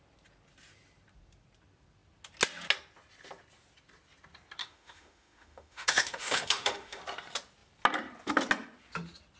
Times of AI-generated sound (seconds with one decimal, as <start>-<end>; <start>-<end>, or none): 4.6-7.0